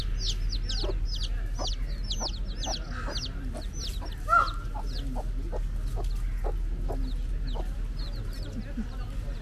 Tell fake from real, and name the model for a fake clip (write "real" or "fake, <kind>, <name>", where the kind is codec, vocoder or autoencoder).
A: real